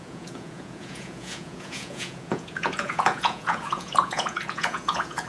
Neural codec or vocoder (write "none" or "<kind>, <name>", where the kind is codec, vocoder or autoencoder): vocoder, Vocos